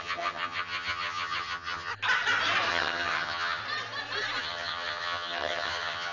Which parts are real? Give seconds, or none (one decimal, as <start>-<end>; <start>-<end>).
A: 1.9-2.7; 3.6-4.4